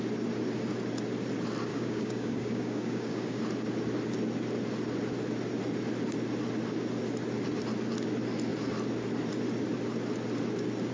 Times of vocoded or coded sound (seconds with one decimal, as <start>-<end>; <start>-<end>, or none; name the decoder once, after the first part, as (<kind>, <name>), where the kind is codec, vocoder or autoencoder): 1.7-3.4 (codec, DAC)